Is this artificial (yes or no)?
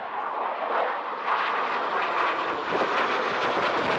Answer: no